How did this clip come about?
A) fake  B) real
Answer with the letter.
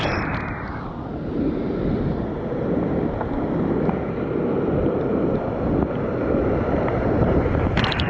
A